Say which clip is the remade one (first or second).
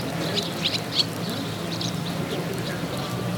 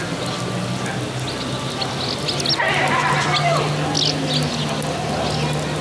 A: first